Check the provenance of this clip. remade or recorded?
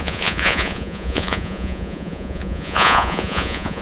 remade